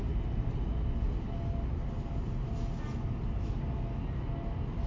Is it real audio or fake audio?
real